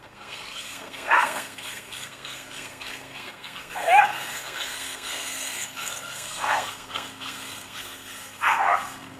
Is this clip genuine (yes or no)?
no